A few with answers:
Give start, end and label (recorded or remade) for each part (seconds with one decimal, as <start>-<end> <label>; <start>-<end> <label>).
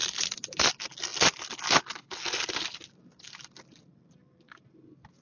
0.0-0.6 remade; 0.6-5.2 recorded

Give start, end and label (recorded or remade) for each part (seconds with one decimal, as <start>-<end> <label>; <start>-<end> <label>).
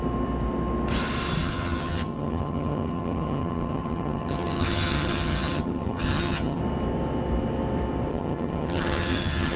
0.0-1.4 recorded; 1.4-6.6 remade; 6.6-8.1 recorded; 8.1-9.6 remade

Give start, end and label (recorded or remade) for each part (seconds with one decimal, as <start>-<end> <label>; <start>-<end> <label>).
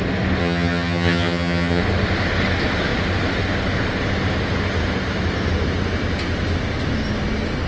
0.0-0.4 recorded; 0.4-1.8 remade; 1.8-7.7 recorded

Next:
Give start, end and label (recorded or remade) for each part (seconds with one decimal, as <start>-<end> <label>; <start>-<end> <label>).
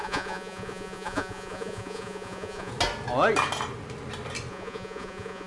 0.0-2.7 remade; 2.7-4.5 recorded; 4.5-5.5 remade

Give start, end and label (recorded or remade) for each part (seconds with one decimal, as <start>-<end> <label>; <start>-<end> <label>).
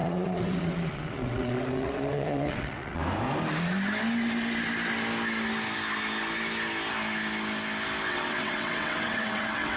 0.0-3.0 remade; 3.0-8.1 recorded; 8.1-9.8 remade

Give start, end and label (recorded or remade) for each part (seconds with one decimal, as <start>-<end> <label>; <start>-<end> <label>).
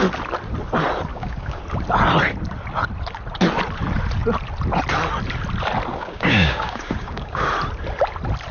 0.0-1.1 recorded; 1.1-1.6 remade; 1.6-5.9 recorded; 5.9-7.5 remade; 7.5-8.5 recorded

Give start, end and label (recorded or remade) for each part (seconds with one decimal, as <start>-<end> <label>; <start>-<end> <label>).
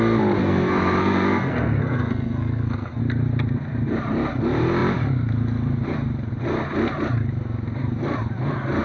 0.0-0.4 recorded; 0.4-3.0 remade; 3.0-8.8 recorded